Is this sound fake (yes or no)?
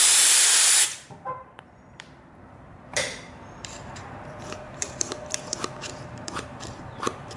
yes